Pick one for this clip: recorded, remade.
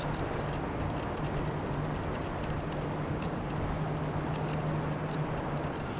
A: recorded